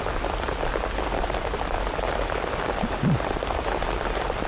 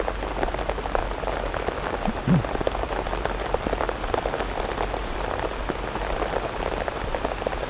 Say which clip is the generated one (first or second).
first